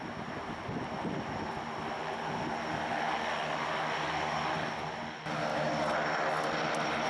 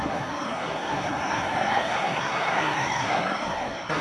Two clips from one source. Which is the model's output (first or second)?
second